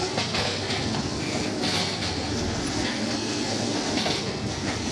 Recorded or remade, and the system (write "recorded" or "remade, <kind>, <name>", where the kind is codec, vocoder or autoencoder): remade, codec, SNAC